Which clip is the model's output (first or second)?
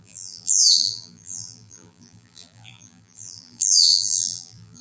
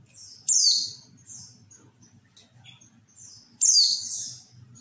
first